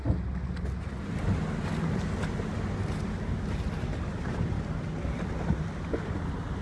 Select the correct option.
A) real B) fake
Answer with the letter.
A